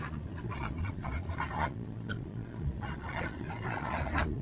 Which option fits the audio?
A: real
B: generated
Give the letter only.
B